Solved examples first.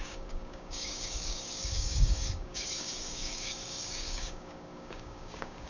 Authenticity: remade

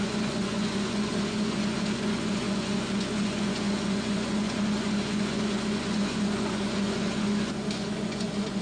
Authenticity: remade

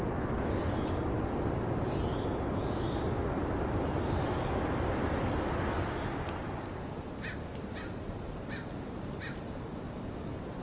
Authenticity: recorded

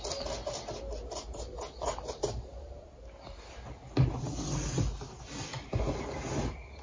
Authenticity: recorded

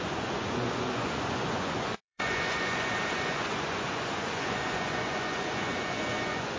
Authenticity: remade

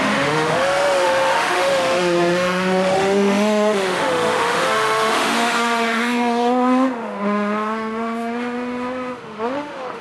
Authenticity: remade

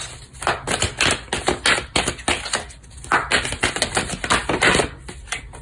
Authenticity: recorded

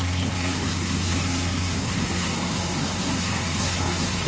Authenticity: remade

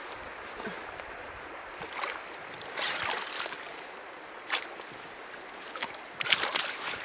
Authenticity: recorded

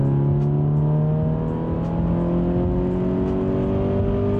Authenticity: recorded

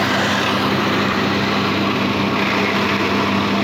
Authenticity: recorded